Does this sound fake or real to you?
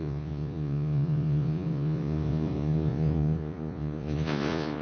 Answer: fake